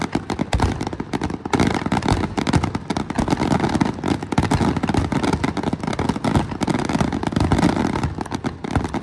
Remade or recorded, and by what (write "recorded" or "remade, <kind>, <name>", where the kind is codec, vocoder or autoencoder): recorded